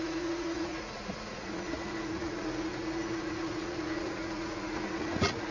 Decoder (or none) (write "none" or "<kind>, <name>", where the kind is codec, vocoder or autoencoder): vocoder, Vocos